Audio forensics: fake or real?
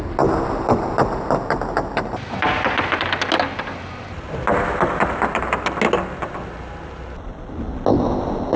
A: real